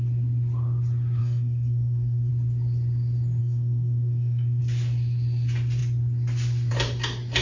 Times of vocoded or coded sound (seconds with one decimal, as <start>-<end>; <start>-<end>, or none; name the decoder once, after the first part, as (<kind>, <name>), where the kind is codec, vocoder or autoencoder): 1.2-2.3 (codec, SNAC); 3.4-4.6